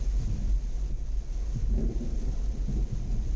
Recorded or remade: recorded